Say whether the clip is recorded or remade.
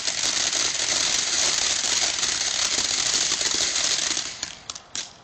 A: recorded